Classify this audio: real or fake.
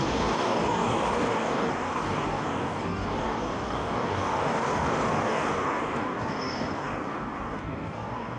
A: fake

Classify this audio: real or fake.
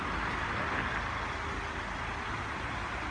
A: real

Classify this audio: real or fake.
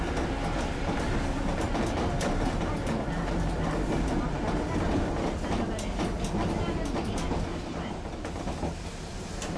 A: real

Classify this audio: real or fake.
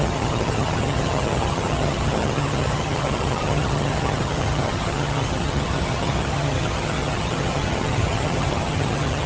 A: fake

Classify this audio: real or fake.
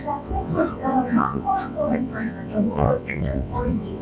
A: fake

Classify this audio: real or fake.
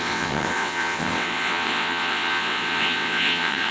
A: fake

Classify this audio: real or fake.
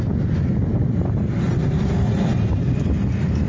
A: real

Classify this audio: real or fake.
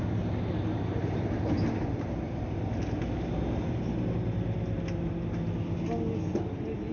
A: real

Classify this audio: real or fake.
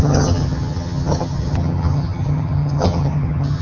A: fake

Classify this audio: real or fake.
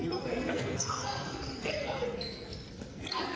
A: fake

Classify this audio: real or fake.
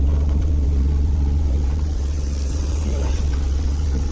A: fake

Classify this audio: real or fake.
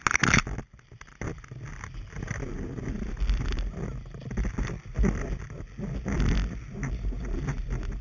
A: real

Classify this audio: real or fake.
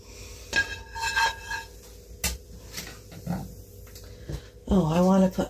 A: real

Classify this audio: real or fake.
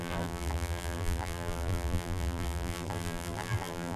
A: fake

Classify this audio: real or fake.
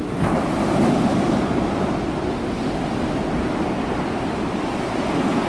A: real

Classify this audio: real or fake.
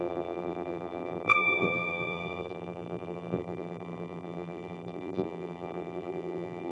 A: fake